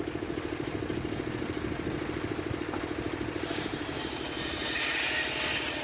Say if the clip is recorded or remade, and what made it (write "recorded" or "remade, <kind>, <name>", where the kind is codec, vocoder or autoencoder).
recorded